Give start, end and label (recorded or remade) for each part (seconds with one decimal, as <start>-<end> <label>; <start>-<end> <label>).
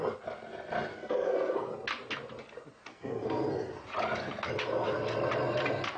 0.0-0.9 recorded; 0.9-1.7 remade; 1.7-2.9 recorded; 2.9-3.7 remade; 3.7-6.0 recorded